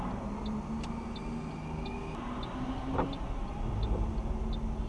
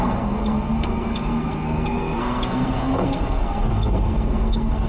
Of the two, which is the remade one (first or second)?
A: second